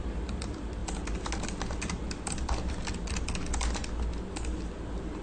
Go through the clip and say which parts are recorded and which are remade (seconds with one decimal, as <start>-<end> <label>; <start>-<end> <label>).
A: 0.0-5.2 recorded